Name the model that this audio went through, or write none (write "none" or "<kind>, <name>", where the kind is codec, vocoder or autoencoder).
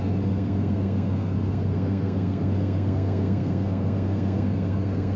codec, SNAC